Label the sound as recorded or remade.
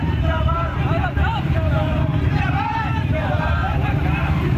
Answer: remade